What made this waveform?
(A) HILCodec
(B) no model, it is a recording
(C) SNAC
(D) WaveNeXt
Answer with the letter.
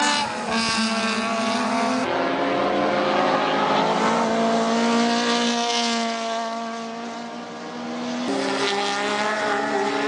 B